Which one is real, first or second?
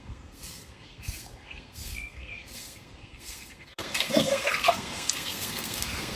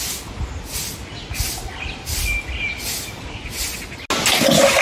second